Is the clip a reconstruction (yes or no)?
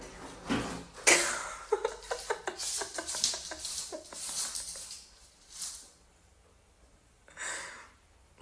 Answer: no